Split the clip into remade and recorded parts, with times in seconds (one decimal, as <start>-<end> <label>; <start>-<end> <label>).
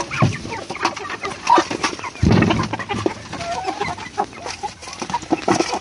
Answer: 0.0-5.8 recorded